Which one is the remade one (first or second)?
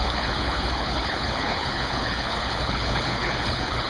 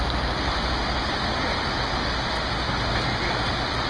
first